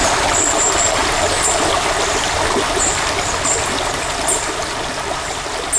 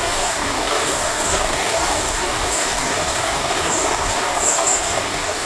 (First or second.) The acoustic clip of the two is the first